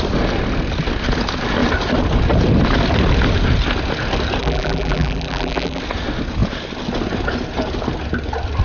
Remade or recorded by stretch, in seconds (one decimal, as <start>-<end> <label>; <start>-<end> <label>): 0.0-4.4 recorded; 4.4-5.8 remade; 5.8-8.6 recorded